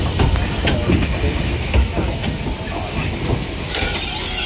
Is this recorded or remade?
recorded